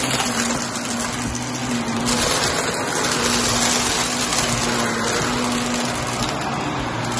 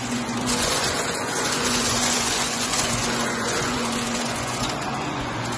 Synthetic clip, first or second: second